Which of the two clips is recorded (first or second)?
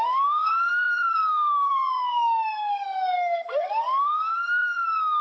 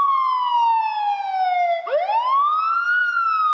second